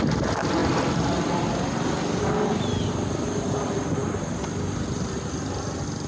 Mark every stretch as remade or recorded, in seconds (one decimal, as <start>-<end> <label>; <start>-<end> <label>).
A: 0.0-6.1 recorded